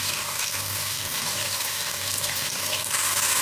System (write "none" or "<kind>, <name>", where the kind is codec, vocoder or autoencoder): codec, DAC